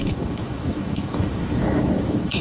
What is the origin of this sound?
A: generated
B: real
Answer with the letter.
A